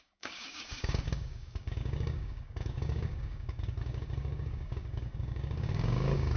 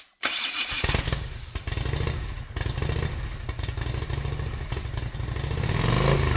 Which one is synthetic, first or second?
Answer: first